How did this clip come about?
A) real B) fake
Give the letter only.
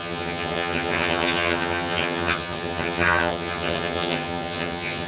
B